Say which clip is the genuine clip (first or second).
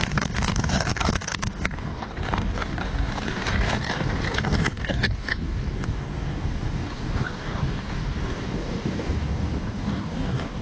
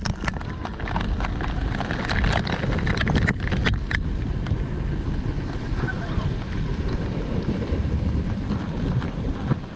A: second